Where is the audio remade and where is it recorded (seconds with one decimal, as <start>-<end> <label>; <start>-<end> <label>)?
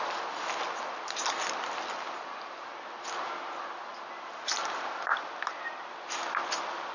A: 0.0-6.9 recorded